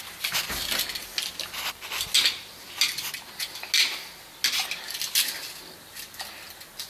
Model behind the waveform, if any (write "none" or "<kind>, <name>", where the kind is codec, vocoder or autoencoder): none